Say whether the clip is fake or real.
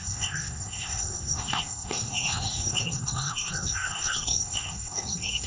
fake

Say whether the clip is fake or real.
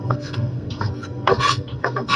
fake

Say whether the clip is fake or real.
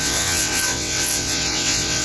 fake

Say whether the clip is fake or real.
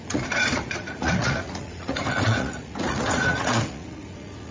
fake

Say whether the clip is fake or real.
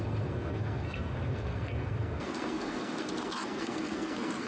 fake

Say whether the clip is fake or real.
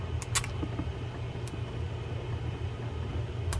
real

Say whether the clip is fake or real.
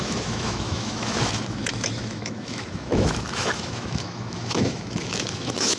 fake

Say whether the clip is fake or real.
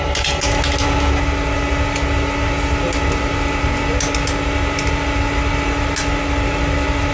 real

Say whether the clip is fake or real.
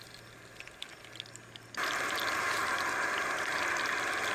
real